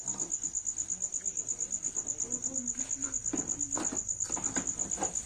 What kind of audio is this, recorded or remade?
recorded